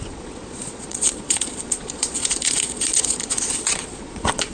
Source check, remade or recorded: remade